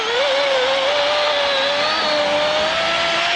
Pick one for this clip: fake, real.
real